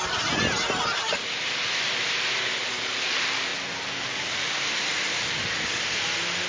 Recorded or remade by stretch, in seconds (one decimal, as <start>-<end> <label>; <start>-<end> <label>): 0.0-3.5 recorded; 3.5-5.5 remade; 5.5-6.5 recorded